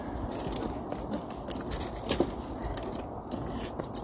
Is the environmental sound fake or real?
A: real